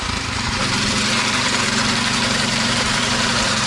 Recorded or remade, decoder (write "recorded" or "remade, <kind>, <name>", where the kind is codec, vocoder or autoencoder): remade, vocoder, BigVGAN v2